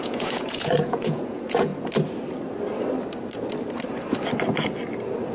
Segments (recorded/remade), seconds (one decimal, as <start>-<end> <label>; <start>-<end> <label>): 0.0-1.7 remade; 1.7-5.3 recorded